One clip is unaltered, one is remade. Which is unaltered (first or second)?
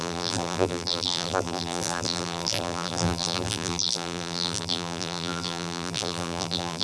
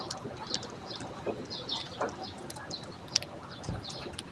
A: second